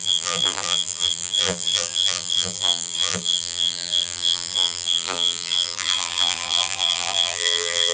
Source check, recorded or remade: remade